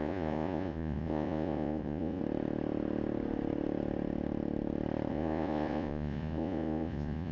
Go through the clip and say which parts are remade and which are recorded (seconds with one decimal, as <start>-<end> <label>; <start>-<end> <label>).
0.0-2.2 remade; 2.2-5.1 recorded; 5.1-7.3 remade